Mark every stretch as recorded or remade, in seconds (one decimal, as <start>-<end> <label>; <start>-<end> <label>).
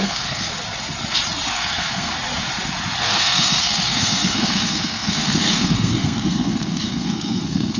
0.0-0.5 remade; 0.5-1.5 recorded; 1.5-2.1 remade; 2.1-3.0 recorded; 3.0-7.8 remade